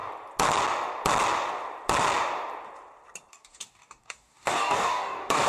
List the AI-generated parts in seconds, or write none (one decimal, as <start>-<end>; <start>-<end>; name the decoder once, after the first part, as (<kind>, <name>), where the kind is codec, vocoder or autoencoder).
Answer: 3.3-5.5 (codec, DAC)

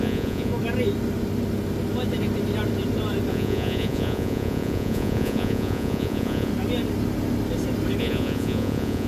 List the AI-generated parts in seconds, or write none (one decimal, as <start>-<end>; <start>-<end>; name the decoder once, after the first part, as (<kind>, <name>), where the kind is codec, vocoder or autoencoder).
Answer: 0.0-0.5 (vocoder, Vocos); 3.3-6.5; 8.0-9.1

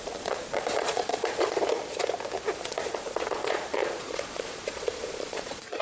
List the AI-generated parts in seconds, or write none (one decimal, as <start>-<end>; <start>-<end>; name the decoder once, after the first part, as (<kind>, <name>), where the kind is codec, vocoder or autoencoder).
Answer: 0.0-1.6 (vocoder, Vocos); 2.6-5.8

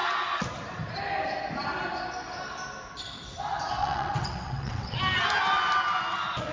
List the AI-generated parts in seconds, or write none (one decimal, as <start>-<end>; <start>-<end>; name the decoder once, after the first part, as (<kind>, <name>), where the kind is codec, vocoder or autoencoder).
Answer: 3.8-5.0 (vocoder, WaveNeXt)

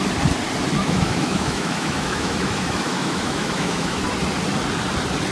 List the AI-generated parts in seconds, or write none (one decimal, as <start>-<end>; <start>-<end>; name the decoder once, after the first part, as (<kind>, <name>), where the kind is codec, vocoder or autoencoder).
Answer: 0.8-4.0 (autoencoder, DAC-VAE)

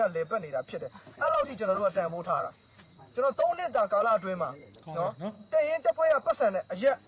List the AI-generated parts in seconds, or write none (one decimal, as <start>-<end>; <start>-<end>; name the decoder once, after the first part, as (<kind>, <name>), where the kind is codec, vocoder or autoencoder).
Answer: 0.9-4.1 (vocoder, Vocos)